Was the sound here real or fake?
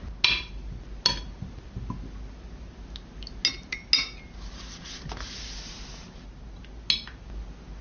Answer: real